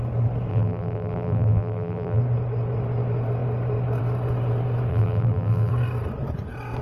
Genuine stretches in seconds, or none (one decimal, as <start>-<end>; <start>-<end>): 0.0-0.5; 2.2-4.9; 5.7-6.8